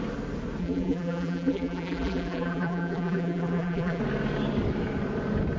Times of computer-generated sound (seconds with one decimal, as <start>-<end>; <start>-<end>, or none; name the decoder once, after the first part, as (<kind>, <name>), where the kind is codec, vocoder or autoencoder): 0.6-4.0 (vocoder, BigVGAN v2)